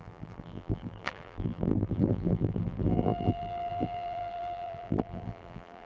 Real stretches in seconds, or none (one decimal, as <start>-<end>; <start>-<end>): none